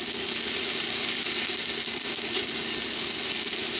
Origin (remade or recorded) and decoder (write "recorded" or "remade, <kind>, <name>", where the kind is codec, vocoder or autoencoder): recorded